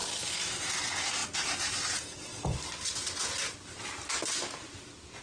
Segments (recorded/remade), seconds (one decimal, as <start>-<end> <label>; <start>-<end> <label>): 0.0-5.2 recorded